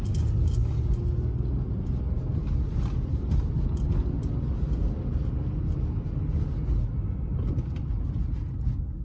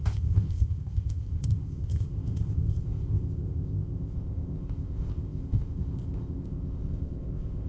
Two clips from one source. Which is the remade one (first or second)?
second